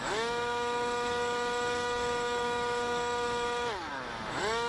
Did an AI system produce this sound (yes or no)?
yes